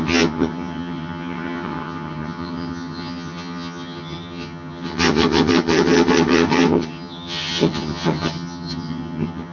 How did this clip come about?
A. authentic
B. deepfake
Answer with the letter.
B